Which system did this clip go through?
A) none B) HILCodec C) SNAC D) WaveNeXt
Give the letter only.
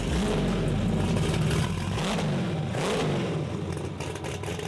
A